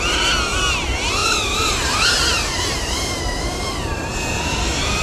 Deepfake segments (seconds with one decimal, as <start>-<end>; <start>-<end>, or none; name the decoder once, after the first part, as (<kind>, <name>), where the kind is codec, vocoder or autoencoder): 1.2-3.2 (vocoder, BigVGAN v2)